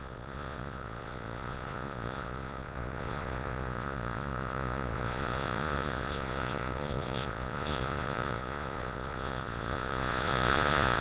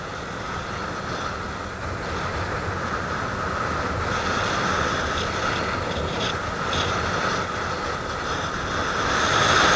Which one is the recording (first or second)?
second